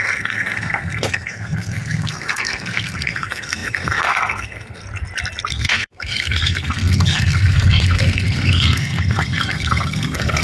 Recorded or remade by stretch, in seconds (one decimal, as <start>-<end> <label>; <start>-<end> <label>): 0.0-4.8 remade; 4.8-5.5 recorded; 5.5-10.4 remade